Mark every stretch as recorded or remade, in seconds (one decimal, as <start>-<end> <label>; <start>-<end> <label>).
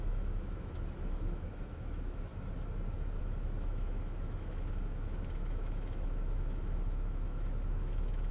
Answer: 0.0-2.3 remade; 2.3-3.2 recorded; 3.2-8.3 remade